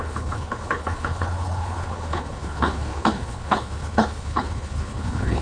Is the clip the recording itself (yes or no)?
no